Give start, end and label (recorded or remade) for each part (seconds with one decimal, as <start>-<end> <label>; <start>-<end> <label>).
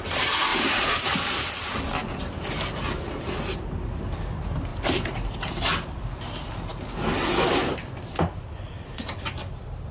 0.0-0.5 recorded; 0.5-1.5 remade; 1.5-4.7 recorded; 4.7-6.0 remade; 6.0-9.9 recorded